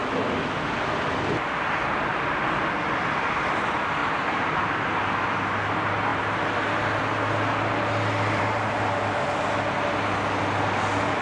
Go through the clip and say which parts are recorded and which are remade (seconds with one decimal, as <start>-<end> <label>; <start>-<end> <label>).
0.0-4.0 recorded; 4.0-4.8 remade; 4.8-11.2 recorded